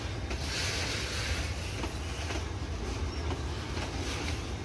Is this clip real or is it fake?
real